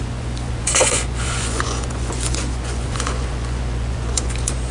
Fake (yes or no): yes